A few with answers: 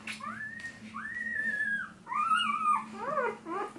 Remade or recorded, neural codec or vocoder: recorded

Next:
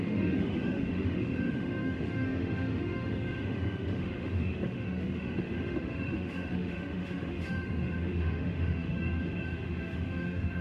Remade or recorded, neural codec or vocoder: remade, autoencoder, DAC-VAE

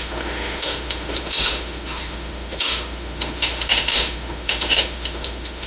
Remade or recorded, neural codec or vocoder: remade, autoencoder, DAC-VAE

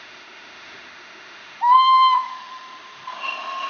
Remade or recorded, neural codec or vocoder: remade, autoencoder, DAC-VAE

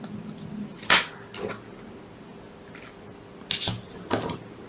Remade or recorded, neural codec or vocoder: recorded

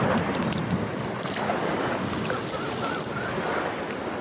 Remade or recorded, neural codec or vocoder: recorded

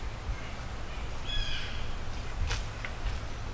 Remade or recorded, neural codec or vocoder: recorded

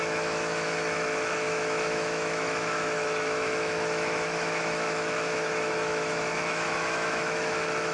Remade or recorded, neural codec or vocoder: remade, autoencoder, DAC-VAE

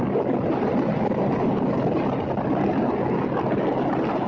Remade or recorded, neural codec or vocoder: recorded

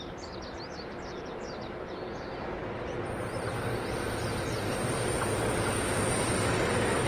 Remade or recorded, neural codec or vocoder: recorded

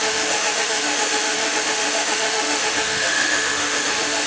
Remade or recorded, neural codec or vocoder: remade, autoencoder, DAC-VAE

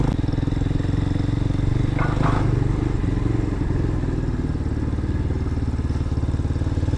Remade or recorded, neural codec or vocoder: recorded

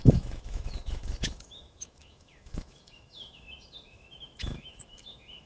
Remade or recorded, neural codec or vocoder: remade, autoencoder, DAC-VAE